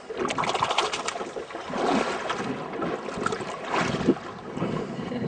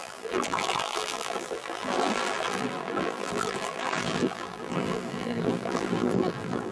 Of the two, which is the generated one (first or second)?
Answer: second